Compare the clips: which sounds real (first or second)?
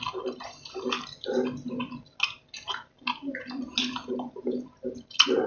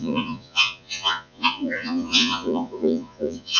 first